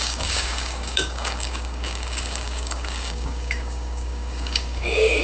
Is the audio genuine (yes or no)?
no